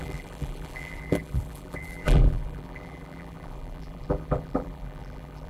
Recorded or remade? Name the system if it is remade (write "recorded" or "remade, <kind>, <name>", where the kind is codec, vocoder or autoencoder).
remade, vocoder, BigVGAN v2